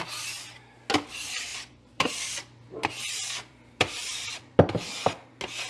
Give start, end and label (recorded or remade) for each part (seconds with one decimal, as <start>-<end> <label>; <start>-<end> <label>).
0.0-1.5 recorded; 1.5-4.9 remade; 4.9-5.7 recorded